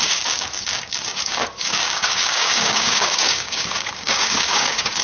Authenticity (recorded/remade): remade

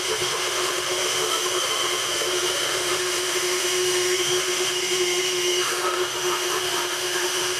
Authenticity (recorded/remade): remade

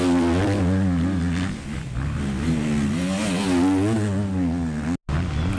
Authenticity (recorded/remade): recorded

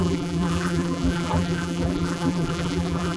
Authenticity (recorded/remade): remade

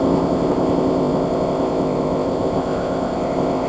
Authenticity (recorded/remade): remade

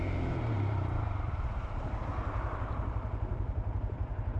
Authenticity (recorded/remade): remade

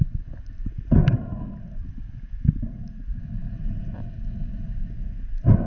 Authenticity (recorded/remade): recorded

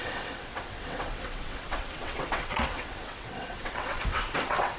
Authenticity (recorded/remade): remade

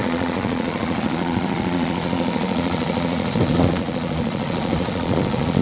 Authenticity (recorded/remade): remade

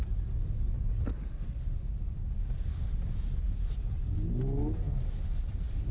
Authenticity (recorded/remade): recorded